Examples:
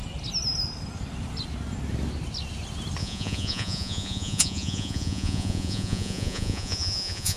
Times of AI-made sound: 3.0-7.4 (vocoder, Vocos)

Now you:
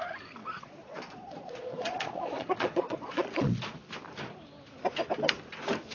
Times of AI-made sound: 0.4-3.9 (vocoder, Vocos)

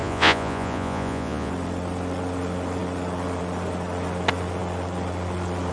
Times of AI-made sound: 0.0-1.5 (vocoder, Vocos)

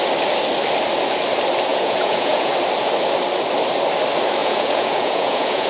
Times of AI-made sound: 1.7-2.5 (vocoder, Vocos); 4.4-5.7

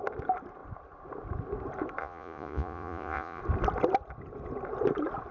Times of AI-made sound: 2.0-3.4 (vocoder, Vocos)

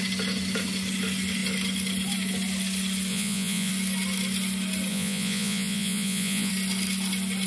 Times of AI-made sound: 3.1-3.7 (vocoder, Vocos); 4.9-6.5